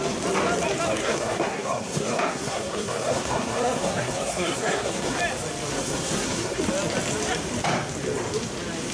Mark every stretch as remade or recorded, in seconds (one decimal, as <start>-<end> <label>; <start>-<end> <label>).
0.0-1.0 recorded; 1.0-5.2 remade; 5.2-5.7 recorded; 5.7-6.6 remade; 6.6-8.9 recorded